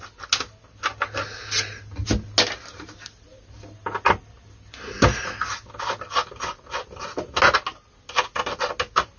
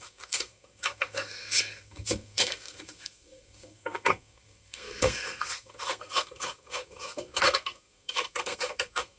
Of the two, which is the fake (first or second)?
second